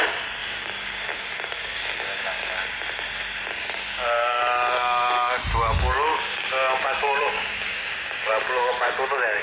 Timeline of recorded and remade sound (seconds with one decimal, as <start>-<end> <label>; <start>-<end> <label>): 0.0-0.4 recorded; 0.4-2.5 remade; 2.5-3.6 recorded; 3.6-4.4 remade; 4.4-6.1 recorded; 6.1-8.3 remade; 8.3-9.4 recorded